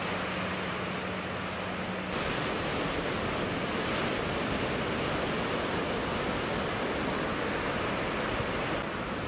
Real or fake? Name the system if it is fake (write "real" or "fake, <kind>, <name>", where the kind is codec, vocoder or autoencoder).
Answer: real